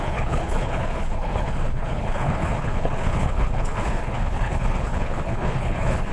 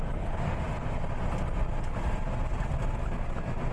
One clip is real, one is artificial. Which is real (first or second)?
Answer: second